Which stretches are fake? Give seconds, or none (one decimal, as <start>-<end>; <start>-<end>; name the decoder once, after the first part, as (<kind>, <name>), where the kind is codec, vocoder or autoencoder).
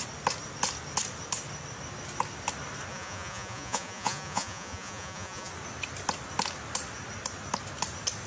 2.9-5.5 (vocoder, Vocos)